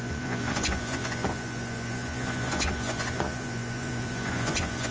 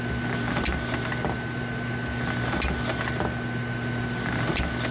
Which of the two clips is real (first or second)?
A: second